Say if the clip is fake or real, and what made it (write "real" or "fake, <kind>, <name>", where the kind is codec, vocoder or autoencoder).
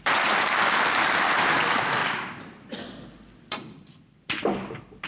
fake, vocoder, BigVGAN v2